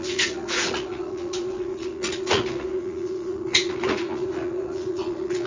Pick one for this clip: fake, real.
fake